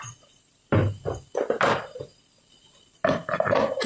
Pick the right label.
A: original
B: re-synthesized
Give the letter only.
A